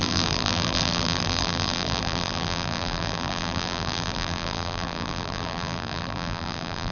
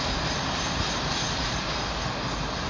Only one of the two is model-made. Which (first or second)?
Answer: first